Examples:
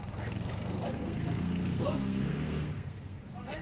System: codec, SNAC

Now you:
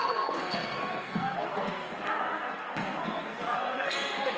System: codec, SNAC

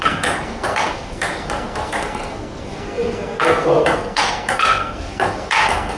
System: codec, SNAC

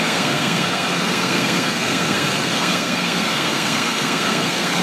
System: codec, SNAC